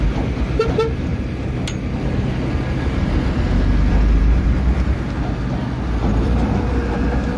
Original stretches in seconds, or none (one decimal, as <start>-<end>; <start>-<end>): 0.0-3.9; 5.2-6.1; 7.0-7.4